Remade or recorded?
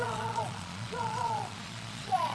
remade